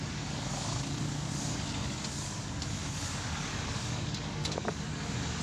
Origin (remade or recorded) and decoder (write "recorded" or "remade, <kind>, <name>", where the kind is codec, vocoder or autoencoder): remade, codec, DAC